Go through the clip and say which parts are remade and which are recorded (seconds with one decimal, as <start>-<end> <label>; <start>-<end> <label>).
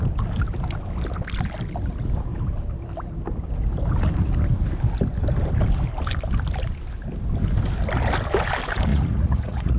0.0-8.9 recorded; 8.9-9.8 remade